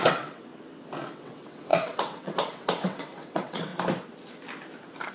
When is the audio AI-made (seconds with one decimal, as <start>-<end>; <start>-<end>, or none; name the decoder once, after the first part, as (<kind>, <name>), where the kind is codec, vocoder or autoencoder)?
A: 0.0-0.5 (vocoder, WaveNeXt); 1.1-3.7